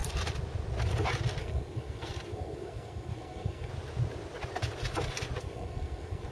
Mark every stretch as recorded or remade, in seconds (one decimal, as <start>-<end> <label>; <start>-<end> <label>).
0.0-1.4 recorded; 1.4-3.7 remade; 3.7-5.4 recorded; 5.4-6.3 remade